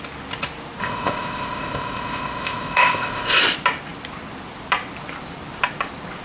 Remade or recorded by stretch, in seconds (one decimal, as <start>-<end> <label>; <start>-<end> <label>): 0.0-0.8 recorded; 0.8-3.4 remade; 3.4-6.2 recorded